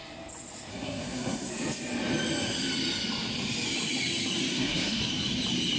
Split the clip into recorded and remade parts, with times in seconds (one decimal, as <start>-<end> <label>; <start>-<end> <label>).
0.0-0.7 recorded; 0.7-1.5 remade; 1.5-4.5 recorded; 4.5-5.0 remade; 5.0-5.8 recorded